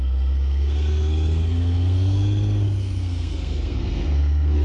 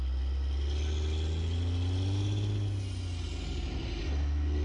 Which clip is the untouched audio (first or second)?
second